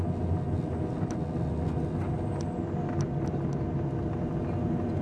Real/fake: real